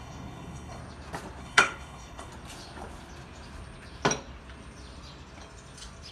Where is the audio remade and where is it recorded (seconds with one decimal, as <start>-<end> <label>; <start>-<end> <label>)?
0.0-0.8 remade; 0.8-1.4 recorded; 1.4-2.3 remade; 2.3-6.1 recorded